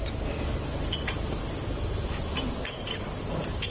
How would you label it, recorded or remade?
recorded